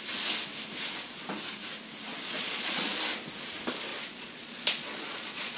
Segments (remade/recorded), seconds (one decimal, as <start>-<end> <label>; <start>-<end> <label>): 0.0-2.1 recorded; 2.1-3.0 remade; 3.0-3.9 recorded; 3.9-5.6 remade